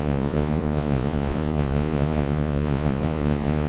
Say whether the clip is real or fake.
fake